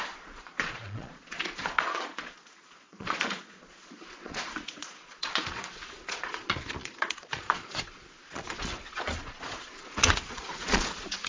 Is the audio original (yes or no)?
no